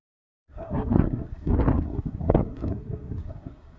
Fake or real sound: fake